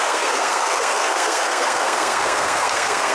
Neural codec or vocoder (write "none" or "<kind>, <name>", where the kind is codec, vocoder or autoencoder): codec, SNAC